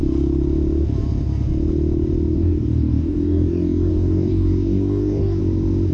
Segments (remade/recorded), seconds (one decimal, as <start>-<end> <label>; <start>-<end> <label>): 0.0-2.3 recorded; 2.3-5.4 remade; 5.4-5.9 recorded